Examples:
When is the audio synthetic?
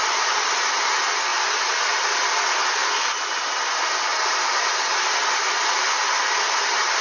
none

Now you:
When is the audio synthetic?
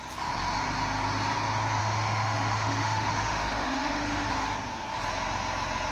1.8-4.3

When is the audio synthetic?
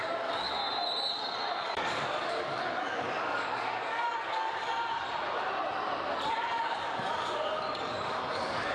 0.0-0.6; 1.5-4.7; 6.3-8.7